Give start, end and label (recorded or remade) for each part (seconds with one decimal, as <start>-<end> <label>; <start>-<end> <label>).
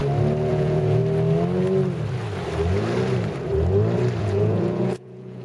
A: 0.0-0.5 recorded; 0.5-1.0 remade; 1.0-4.2 recorded; 4.2-5.4 remade